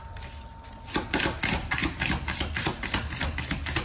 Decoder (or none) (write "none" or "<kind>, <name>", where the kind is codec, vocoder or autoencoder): none